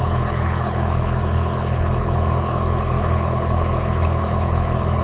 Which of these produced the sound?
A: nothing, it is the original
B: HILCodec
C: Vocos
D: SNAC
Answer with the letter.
B